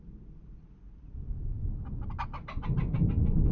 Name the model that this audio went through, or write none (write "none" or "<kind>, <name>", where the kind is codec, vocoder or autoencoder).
none